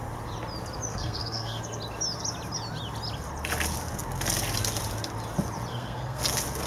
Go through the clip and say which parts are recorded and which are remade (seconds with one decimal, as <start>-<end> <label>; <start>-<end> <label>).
0.0-0.9 recorded; 0.9-1.6 remade; 1.6-5.7 recorded; 5.7-6.2 remade; 6.2-6.7 recorded